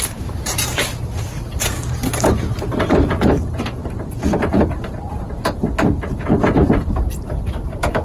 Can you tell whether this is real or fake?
fake